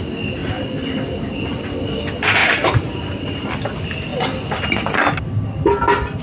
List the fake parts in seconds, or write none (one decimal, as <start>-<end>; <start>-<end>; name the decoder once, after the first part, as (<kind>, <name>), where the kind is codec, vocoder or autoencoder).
2.4-3.5 (vocoder, BigVGAN v2)